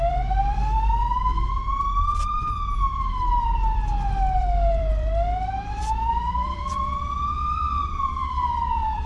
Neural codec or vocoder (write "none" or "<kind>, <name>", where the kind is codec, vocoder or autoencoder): vocoder, BigVGAN v2